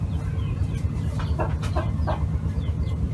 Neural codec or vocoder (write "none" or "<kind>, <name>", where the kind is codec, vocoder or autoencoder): none